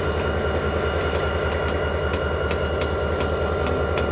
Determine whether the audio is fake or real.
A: real